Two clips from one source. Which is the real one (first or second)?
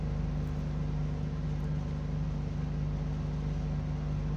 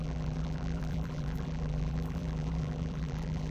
first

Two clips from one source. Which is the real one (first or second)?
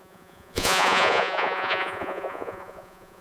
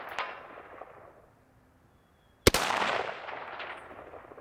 second